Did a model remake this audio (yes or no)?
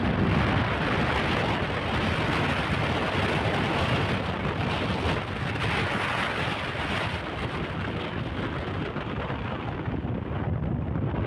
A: no